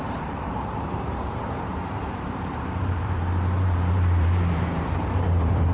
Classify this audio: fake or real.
fake